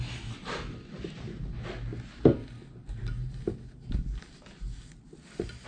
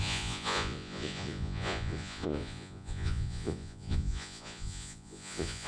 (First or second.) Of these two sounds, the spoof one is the second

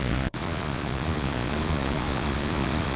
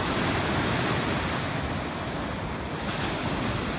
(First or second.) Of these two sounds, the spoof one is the first